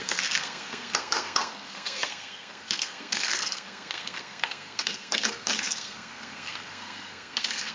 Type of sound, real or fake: fake